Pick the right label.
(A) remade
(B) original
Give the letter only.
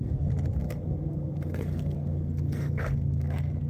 A